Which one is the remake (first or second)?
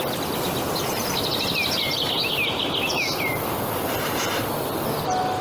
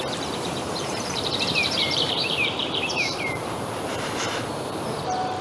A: second